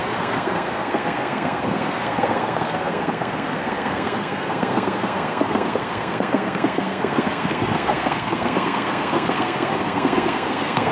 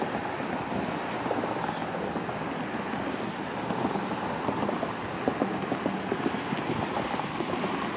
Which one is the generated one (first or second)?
first